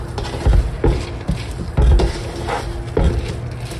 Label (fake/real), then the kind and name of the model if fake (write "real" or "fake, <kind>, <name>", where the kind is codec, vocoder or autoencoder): real